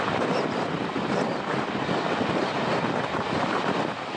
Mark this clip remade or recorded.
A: remade